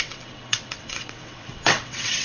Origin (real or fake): fake